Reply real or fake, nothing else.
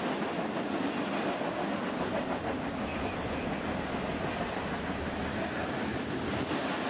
real